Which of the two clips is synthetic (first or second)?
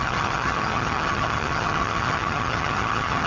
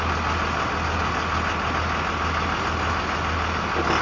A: first